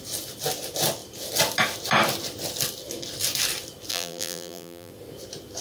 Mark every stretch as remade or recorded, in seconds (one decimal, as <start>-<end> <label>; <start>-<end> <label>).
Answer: 0.0-3.9 recorded; 3.9-4.9 remade; 4.9-5.6 recorded